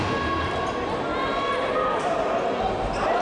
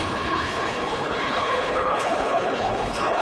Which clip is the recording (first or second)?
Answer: first